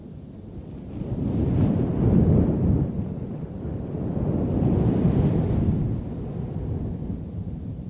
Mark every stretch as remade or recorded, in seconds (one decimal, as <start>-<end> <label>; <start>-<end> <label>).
0.0-7.9 recorded